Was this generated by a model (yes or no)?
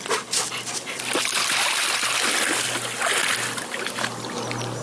no